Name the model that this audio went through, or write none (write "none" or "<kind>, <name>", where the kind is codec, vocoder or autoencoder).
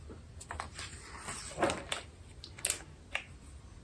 none